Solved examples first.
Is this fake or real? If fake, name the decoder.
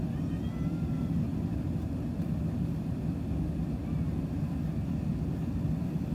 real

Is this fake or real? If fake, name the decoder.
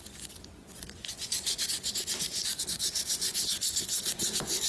fake, vocoder, Vocos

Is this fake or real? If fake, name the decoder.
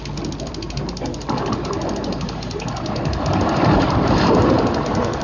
real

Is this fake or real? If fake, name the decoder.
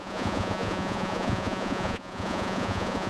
fake, vocoder, Vocos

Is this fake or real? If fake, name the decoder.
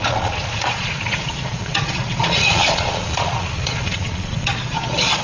fake, vocoder, Vocos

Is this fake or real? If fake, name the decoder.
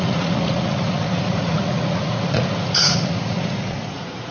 fake, vocoder, Vocos